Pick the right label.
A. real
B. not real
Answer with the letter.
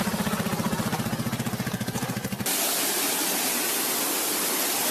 A